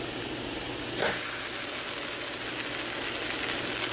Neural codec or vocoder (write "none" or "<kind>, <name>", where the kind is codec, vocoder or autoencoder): none